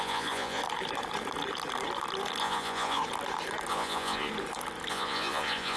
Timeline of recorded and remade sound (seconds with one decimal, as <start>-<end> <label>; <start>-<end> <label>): 0.0-0.6 remade; 0.6-2.4 recorded; 2.4-3.0 remade; 3.0-3.7 recorded; 3.7-4.3 remade; 4.3-4.9 recorded; 4.9-5.8 remade